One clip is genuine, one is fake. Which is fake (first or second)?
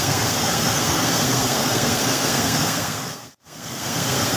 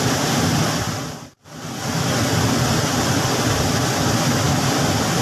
first